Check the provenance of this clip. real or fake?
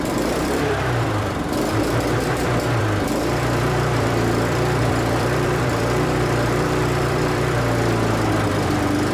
fake